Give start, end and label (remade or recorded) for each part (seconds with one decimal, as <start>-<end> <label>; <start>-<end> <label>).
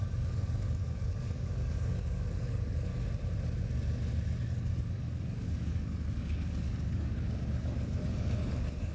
0.0-2.9 remade; 2.9-4.4 recorded; 4.4-8.9 remade